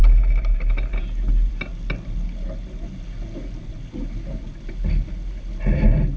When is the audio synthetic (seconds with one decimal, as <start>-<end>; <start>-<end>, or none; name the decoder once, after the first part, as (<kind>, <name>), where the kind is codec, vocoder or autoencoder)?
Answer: none